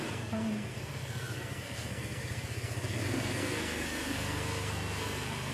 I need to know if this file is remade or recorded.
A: remade